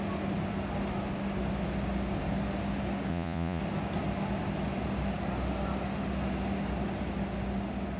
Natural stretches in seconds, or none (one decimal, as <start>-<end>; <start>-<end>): 0.0-3.1; 3.6-8.0